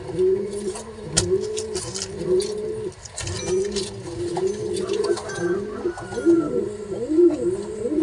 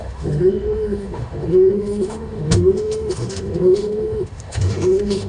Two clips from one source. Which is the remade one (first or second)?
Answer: second